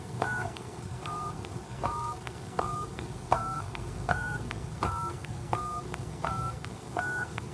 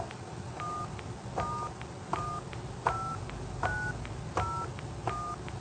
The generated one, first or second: first